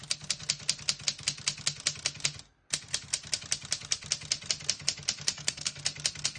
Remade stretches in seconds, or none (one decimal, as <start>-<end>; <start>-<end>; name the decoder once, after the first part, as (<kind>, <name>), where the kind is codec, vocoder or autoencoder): 5.3-5.8 (codec, SNAC)